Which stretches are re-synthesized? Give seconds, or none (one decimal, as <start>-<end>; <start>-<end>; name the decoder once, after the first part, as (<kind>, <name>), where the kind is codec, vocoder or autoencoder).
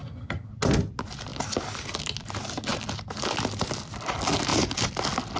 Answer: 0.0-0.5 (vocoder, HiFi-GAN)